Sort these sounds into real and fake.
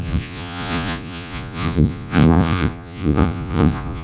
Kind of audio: fake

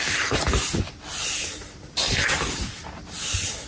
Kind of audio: real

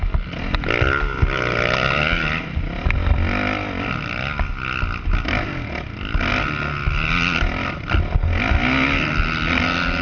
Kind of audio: real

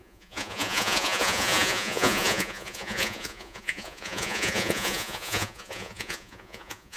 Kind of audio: fake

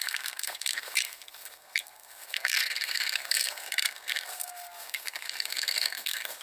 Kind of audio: fake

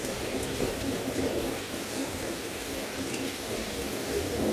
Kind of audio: fake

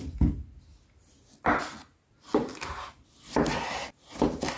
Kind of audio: real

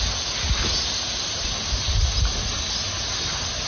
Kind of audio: real